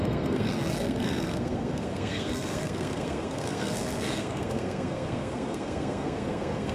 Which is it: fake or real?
fake